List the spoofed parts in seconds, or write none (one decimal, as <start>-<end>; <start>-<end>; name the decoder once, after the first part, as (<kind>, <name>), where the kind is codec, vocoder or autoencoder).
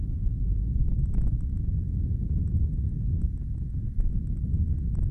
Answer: none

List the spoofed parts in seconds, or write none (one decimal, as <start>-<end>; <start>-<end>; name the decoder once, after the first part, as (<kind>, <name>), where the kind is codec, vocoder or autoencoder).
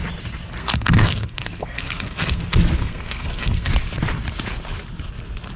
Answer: 0.6-2.4 (codec, SNAC); 2.8-3.7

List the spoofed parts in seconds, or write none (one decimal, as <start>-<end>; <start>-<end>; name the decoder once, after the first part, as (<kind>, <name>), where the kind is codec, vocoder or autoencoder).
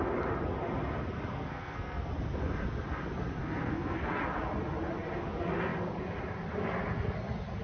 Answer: 1.3-2.1 (codec, SNAC); 3.4-4.1